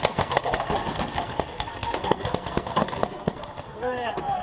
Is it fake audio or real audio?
fake